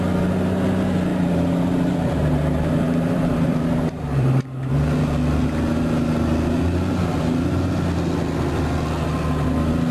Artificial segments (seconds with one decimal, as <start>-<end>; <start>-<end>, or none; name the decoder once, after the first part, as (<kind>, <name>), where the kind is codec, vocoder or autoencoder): 1.1-4.7 (vocoder, BigVGAN v2)